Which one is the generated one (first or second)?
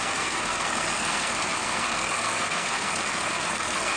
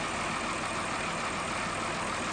first